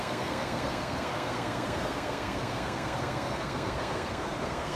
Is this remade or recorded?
remade